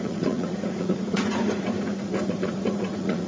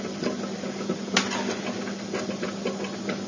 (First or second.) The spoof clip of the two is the first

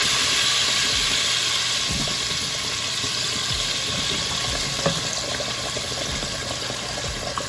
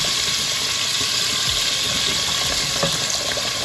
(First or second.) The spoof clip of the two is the second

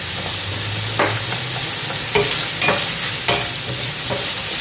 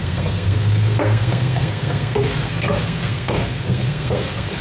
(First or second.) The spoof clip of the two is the second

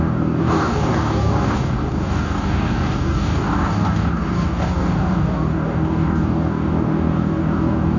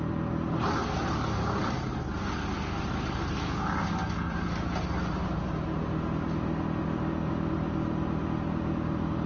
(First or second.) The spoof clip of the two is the first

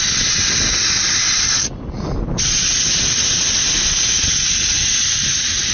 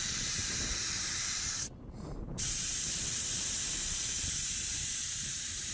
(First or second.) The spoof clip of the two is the second